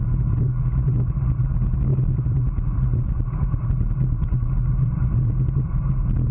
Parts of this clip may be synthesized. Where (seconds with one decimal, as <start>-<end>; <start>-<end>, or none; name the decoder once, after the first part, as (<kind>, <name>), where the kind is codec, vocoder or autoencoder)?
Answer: 1.9-4.8 (vocoder, BigVGAN v2)